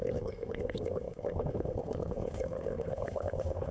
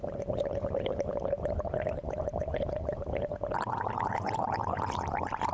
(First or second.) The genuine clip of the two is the second